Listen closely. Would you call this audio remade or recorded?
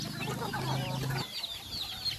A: recorded